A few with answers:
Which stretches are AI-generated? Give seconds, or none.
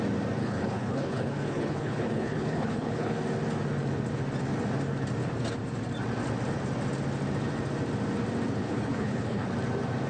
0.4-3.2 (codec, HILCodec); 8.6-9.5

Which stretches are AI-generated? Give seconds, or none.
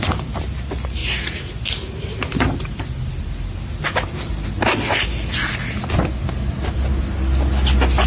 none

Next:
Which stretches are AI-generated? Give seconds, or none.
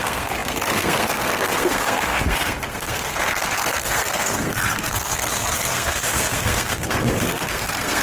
0.0-8.0 (codec, SNAC)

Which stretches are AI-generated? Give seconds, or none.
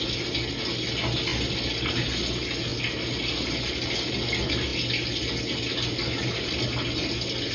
none